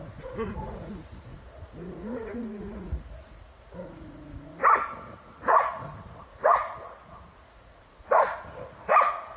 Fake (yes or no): yes